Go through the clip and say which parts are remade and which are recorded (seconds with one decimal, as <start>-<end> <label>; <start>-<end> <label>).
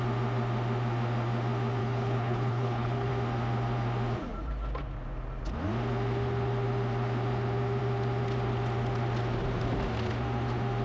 0.0-1.8 recorded; 1.8-3.1 remade; 3.1-10.8 recorded